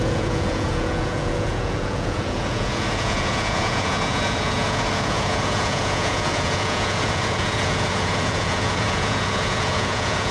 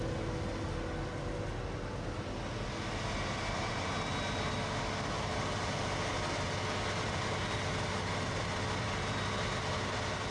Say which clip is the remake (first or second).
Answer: first